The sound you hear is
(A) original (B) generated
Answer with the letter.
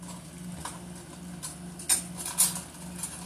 A